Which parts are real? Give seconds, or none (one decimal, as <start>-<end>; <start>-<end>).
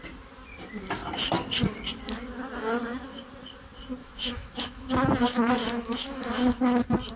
0.0-4.0; 4.9-5.6; 6.6-7.2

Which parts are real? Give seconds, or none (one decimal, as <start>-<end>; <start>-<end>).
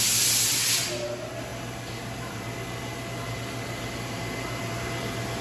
0.0-5.4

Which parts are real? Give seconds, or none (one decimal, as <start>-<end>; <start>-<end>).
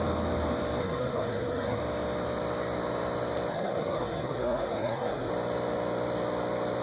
0.0-0.8; 1.8-3.5; 5.3-6.8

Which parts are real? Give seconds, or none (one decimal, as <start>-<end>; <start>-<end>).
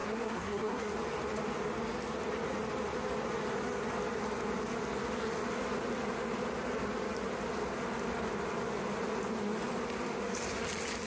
0.9-11.1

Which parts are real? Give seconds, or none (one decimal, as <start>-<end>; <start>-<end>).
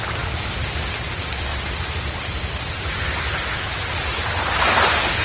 0.0-1.5; 4.6-5.2